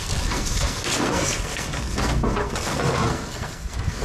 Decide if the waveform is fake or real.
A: fake